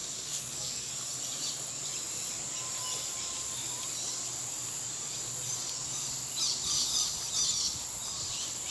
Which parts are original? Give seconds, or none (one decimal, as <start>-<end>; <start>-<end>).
0.9-8.7